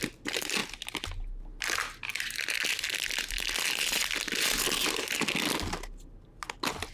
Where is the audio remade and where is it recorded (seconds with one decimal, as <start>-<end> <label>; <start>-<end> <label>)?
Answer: 0.0-6.9 recorded